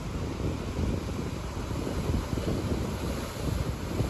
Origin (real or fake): real